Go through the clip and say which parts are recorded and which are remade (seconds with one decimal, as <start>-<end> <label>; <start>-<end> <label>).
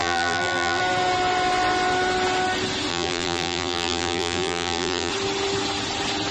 0.0-0.8 remade; 0.8-2.9 recorded; 2.9-5.1 remade; 5.1-6.3 recorded